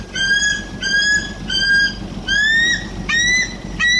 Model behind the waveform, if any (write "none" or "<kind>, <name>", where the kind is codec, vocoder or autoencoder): none